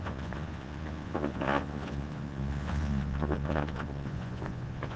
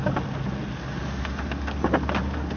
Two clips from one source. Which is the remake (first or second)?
first